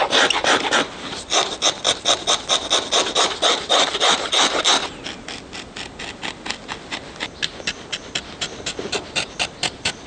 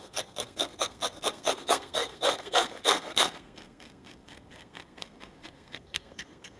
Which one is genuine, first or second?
first